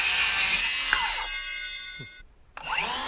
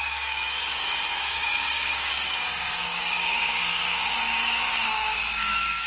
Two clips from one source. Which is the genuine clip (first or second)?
first